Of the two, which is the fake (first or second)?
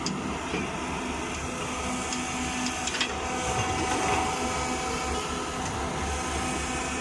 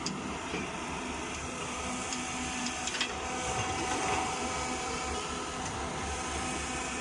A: second